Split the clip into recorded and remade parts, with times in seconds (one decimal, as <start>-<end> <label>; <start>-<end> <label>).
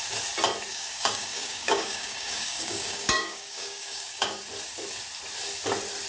0.0-0.7 recorded; 0.7-4.4 remade; 4.4-6.1 recorded